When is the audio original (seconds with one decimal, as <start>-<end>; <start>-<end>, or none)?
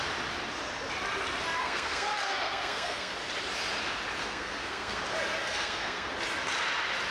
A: 0.0-1.6; 3.1-4.2; 5.0-5.4; 6.1-7.1